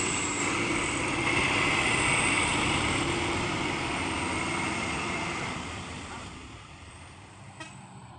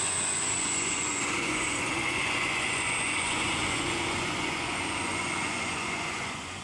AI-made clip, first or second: second